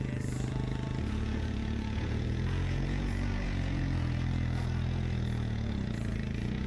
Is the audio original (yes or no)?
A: no